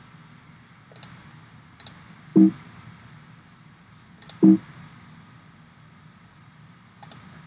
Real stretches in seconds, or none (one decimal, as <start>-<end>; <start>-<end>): 0.0-7.5